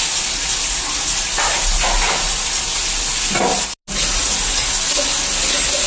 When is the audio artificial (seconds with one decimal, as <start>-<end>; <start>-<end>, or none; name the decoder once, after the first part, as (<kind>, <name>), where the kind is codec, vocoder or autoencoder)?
none